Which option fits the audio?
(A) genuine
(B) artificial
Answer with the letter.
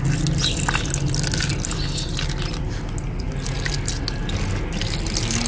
A